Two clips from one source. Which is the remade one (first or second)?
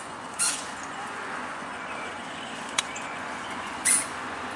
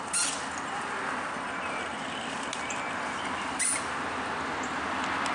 first